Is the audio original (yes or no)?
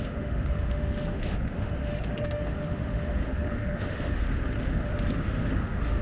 no